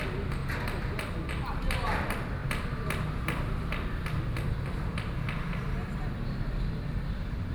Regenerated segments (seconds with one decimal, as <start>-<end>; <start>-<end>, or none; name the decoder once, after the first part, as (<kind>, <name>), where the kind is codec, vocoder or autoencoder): 0.0-0.4 (vocoder, BigVGAN v2); 1.3-7.5